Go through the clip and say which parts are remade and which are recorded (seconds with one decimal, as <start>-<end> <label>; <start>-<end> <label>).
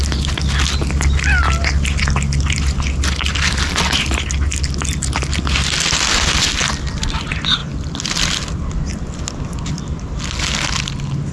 0.0-11.3 recorded